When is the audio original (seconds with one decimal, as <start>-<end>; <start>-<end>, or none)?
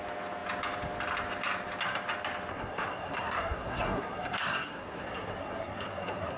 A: 0.0-2.5